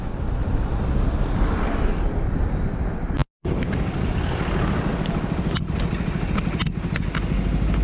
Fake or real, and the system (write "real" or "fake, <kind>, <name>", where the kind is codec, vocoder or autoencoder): real